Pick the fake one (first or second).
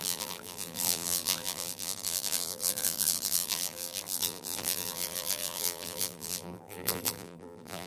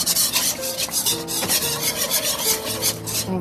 first